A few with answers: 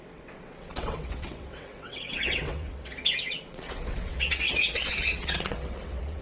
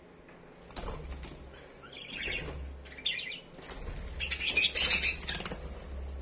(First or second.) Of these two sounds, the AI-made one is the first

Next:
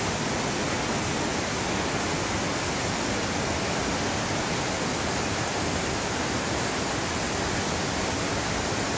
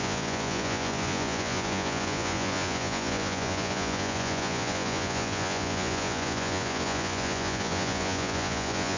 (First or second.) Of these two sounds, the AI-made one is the second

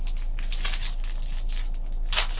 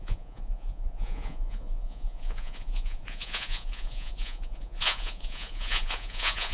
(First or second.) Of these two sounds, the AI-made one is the second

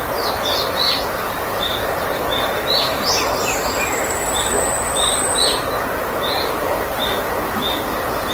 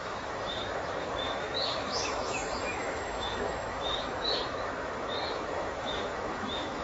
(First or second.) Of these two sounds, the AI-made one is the second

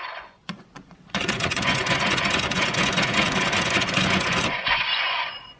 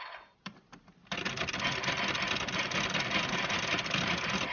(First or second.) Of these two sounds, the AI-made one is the first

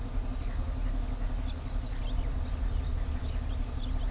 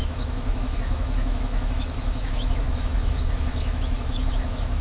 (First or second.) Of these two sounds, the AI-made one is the second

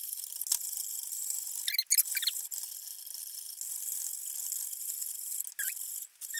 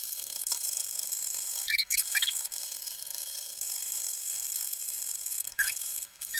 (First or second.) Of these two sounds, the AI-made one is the second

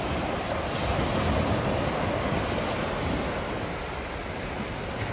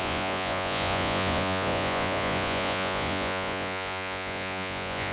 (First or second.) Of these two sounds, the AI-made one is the second